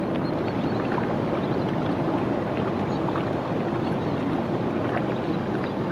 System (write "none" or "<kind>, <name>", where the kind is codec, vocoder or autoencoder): none